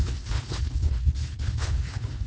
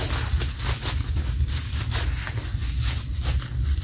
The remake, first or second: first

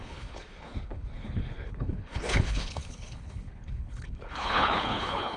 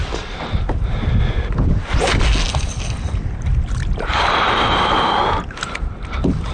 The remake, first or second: first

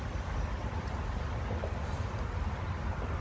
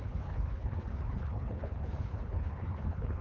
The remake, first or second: second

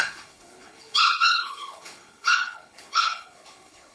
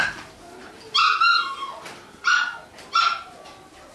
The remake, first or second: first